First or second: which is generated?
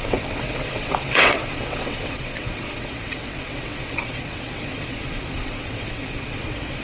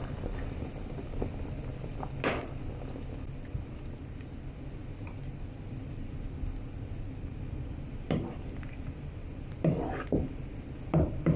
first